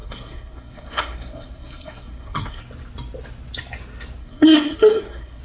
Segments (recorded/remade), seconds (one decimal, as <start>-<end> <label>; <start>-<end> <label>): 0.0-2.6 remade; 2.6-4.2 recorded; 4.2-5.4 remade

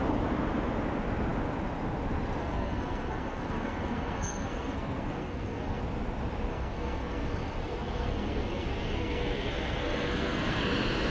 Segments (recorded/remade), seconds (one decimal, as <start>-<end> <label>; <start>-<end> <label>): 0.0-2.4 recorded; 2.4-5.8 remade; 5.8-6.5 recorded; 6.5-10.6 remade; 10.6-11.1 recorded

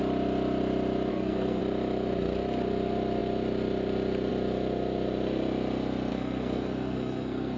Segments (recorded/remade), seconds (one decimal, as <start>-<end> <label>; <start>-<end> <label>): 0.0-1.1 recorded; 1.1-1.6 remade; 1.6-6.1 recorded; 6.1-7.6 remade

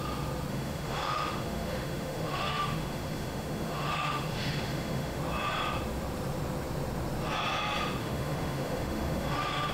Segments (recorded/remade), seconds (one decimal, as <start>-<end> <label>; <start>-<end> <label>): 0.0-0.5 recorded; 0.5-5.2 remade; 5.2-8.0 recorded; 8.0-9.7 remade

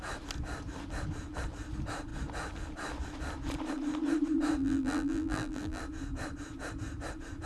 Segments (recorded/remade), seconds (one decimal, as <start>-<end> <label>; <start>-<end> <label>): 0.0-4.6 recorded; 4.6-5.8 remade; 5.8-7.5 recorded